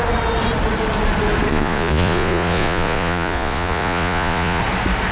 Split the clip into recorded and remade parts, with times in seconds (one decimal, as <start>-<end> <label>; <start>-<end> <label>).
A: 0.0-1.5 recorded; 1.5-4.6 remade; 4.6-5.1 recorded